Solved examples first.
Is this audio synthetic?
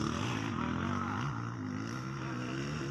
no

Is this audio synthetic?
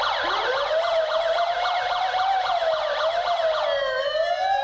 no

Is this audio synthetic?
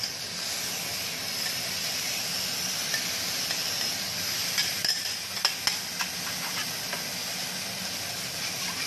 no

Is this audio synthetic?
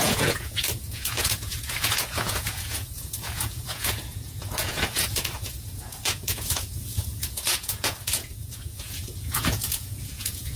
yes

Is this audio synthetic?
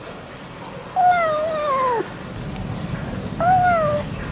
no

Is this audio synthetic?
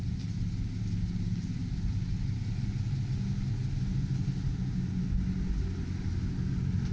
no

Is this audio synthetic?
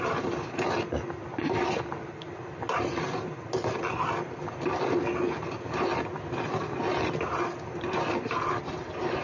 no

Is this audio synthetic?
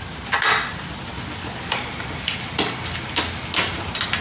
no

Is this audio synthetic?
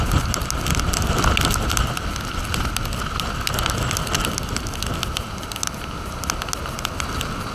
no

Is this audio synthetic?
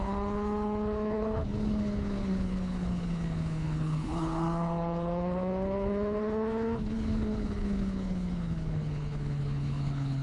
yes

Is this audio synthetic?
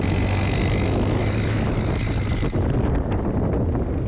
no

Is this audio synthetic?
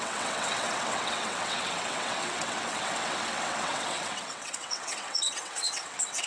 yes